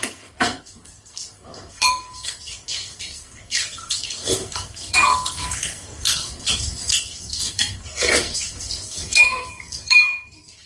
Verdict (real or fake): fake